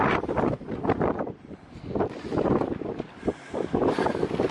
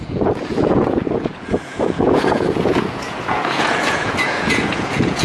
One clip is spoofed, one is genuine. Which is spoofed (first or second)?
second